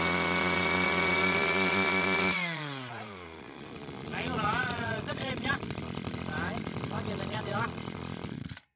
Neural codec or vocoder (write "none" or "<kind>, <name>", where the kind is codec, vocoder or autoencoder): vocoder, Vocos